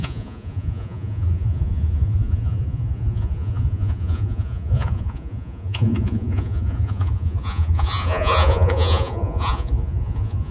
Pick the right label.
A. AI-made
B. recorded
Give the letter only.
A